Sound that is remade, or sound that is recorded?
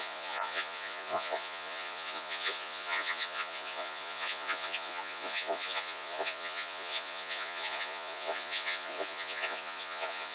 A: remade